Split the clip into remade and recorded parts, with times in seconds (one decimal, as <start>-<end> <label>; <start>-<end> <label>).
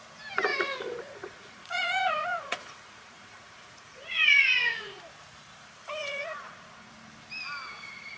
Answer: 0.0-0.5 recorded; 0.5-5.0 remade; 5.0-5.8 recorded; 5.8-6.9 remade; 6.9-8.2 recorded